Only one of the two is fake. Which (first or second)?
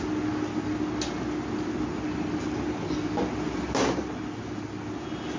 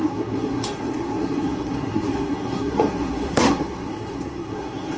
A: second